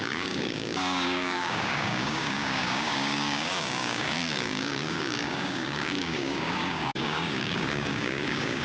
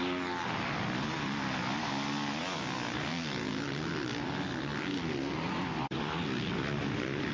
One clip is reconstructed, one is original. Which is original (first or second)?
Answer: second